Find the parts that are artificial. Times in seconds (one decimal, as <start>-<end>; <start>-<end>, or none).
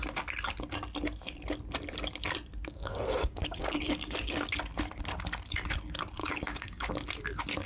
2.6-4.3; 6.2-6.9